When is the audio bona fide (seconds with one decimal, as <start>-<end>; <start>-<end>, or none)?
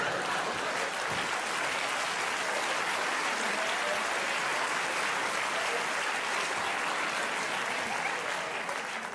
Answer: 0.0-9.1